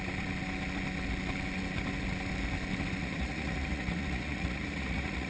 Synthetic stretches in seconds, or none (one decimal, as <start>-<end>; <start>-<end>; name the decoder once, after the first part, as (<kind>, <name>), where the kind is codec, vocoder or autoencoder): 3.0-5.3 (vocoder, Vocos)